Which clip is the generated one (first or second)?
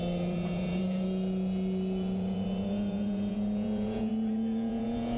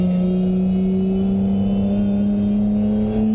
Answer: first